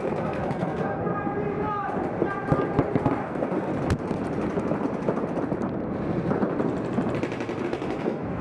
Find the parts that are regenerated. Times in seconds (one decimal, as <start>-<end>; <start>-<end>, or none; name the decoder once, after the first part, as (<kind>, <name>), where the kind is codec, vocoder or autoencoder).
0.0-1.1 (codec, SNAC); 3.2-3.7; 7.6-8.4